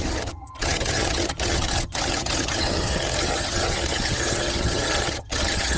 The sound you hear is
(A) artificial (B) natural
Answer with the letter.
A